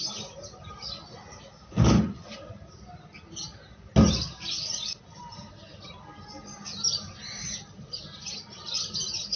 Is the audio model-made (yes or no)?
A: no